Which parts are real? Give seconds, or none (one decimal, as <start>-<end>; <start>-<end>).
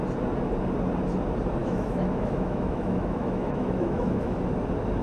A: 0.0-1.6; 4.4-5.0